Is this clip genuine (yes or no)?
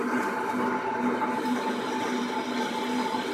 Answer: yes